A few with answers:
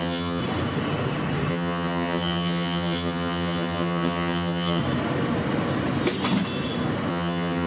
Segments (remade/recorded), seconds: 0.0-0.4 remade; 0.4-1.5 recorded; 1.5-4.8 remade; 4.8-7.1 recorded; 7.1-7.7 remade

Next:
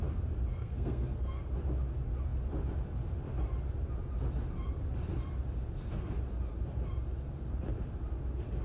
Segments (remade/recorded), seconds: 0.0-0.5 recorded; 0.5-1.4 remade; 1.4-8.6 recorded

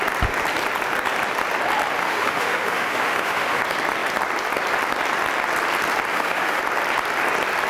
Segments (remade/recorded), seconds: 0.0-2.0 recorded; 2.0-3.6 remade; 3.6-6.1 recorded; 6.1-6.6 remade; 6.6-7.7 recorded